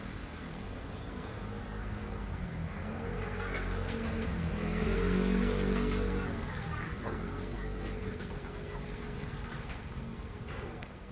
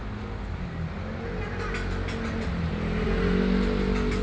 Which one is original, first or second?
second